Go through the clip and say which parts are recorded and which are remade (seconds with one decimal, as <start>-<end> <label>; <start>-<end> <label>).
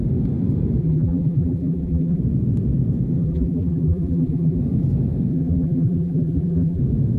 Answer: 0.0-0.8 recorded; 0.8-2.2 remade; 2.2-3.2 recorded; 3.2-4.6 remade; 4.6-5.3 recorded; 5.3-6.8 remade; 6.8-7.2 recorded